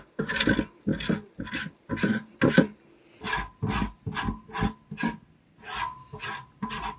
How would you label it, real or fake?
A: real